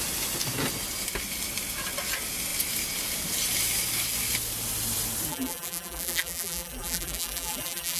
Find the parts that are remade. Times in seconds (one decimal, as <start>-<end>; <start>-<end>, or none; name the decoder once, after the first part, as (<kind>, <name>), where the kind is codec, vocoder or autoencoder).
5.3-8.0 (vocoder, BigVGAN v2)